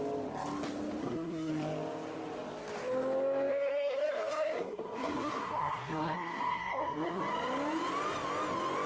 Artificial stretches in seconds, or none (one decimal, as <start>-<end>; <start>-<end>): 1.0-1.5; 3.5-7.2